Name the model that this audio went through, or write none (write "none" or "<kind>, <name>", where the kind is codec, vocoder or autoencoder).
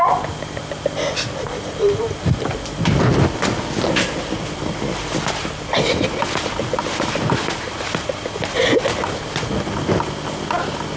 none